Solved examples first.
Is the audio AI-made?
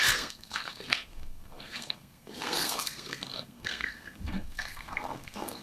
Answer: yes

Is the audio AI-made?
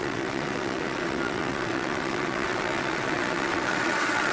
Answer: yes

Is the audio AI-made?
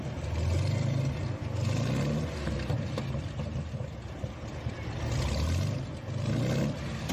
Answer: no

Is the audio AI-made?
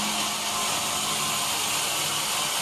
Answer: no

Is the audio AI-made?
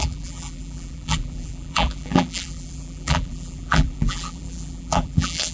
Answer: yes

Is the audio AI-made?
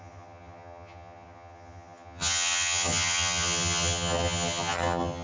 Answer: yes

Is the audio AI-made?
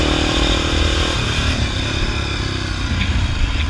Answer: no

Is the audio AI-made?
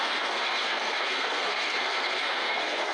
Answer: yes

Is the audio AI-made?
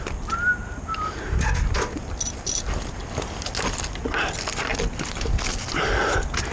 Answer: no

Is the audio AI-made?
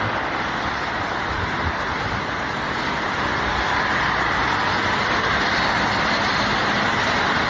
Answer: yes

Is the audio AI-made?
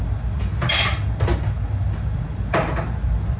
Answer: no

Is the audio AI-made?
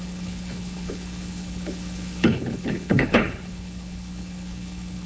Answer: yes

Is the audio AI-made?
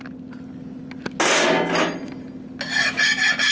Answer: no